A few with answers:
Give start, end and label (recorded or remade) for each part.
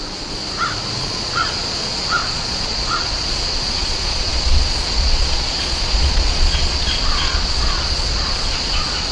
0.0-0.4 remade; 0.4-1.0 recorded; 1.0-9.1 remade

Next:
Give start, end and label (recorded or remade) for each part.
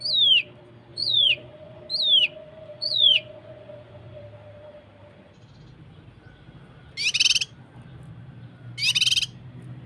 0.0-0.9 recorded; 0.9-1.8 remade; 1.8-2.4 recorded; 2.4-4.2 remade; 4.2-9.9 recorded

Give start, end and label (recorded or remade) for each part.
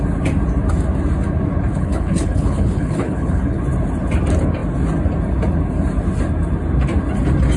0.0-1.7 recorded; 1.7-3.6 remade; 3.6-7.6 recorded